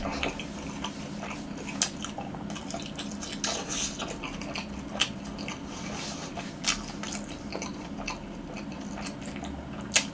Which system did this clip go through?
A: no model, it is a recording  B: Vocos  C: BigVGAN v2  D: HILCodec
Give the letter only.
A